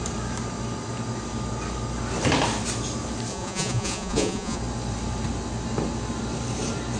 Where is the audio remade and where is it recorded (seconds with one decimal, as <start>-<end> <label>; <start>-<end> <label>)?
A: 0.0-3.3 recorded; 3.3-4.6 remade; 4.6-7.0 recorded